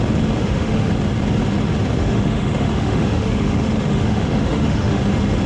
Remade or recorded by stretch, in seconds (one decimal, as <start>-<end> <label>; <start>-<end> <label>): 0.0-0.4 recorded; 0.4-0.9 remade; 0.9-2.0 recorded; 2.0-5.0 remade; 5.0-5.5 recorded